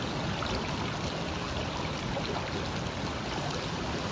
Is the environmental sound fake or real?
real